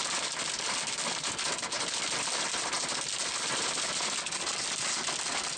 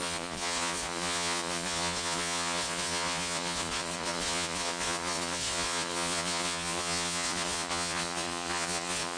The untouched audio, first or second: first